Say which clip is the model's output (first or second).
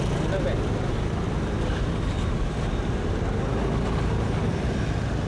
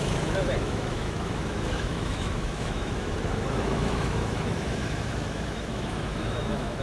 second